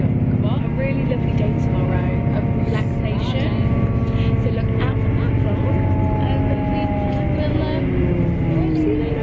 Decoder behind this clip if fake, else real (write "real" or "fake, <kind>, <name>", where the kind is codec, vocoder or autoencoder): real